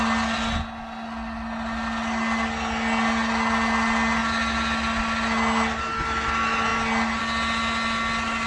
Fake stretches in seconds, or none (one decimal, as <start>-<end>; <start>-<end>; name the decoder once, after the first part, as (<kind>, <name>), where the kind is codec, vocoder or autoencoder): none